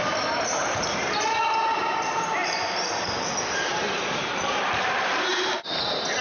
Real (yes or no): no